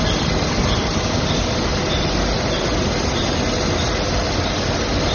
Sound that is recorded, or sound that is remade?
recorded